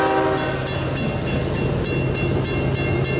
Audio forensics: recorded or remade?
recorded